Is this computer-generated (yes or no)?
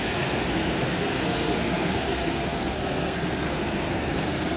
yes